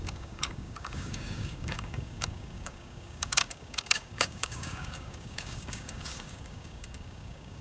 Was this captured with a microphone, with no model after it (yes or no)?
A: no